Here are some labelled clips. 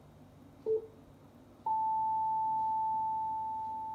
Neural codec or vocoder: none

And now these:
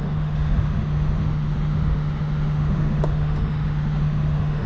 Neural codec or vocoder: autoencoder, DAC-VAE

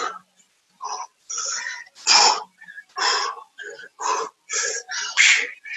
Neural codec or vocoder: none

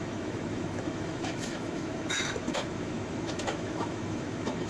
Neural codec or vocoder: autoencoder, DAC-VAE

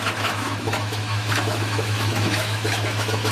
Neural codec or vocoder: autoencoder, DAC-VAE